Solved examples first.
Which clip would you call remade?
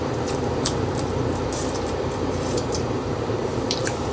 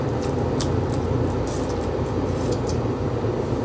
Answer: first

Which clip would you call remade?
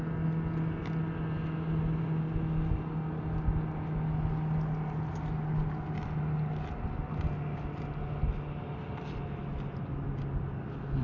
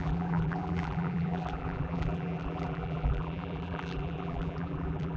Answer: second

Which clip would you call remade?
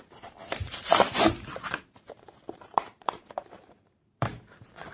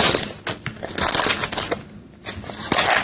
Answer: first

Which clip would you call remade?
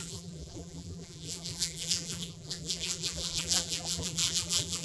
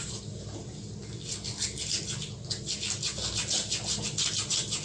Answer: first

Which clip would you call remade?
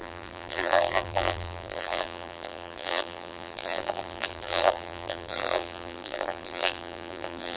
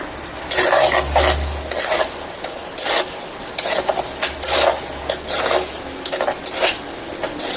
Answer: first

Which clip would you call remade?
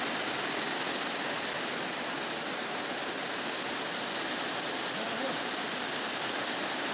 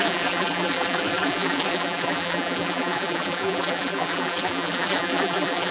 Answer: second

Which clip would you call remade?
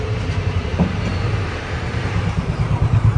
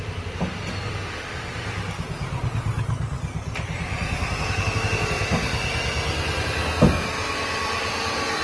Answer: first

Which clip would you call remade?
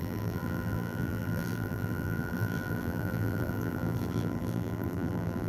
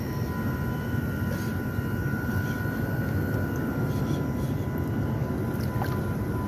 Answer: first